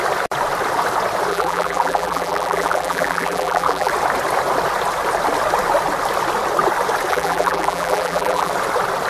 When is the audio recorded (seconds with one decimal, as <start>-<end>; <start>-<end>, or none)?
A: 0.0-1.3; 3.9-7.1; 8.5-9.1